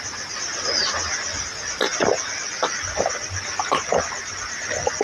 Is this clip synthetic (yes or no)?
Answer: no